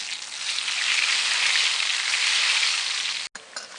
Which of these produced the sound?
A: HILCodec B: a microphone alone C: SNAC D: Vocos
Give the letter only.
B